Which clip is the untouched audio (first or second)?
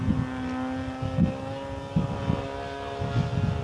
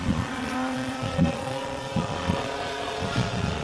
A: first